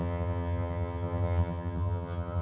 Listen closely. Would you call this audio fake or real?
fake